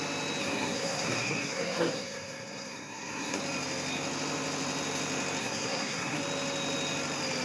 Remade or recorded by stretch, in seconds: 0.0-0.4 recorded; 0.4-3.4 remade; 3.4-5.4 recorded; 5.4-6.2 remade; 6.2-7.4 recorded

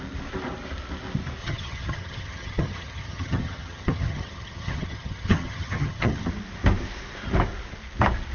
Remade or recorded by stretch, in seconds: 0.0-1.4 recorded; 1.4-6.3 remade; 6.3-8.3 recorded